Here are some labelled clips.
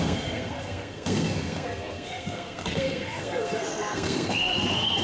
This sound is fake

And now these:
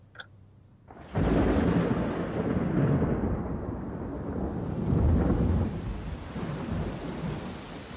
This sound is real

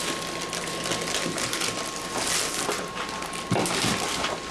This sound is real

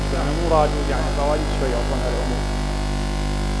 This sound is real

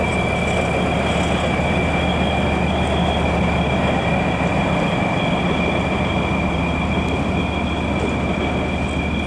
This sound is real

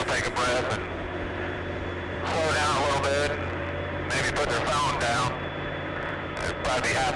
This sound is fake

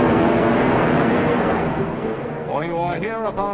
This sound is fake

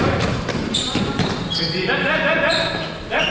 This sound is fake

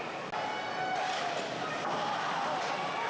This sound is real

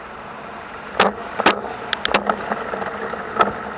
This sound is real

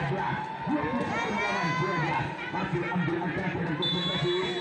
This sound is real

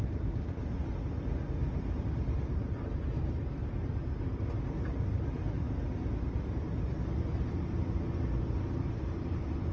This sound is real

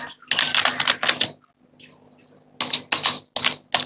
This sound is real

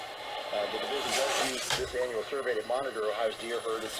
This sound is fake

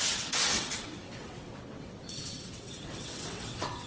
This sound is fake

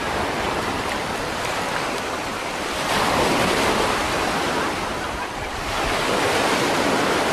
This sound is fake